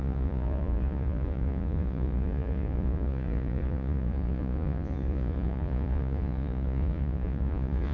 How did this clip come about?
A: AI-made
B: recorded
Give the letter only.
A